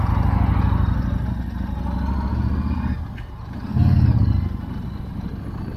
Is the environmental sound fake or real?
real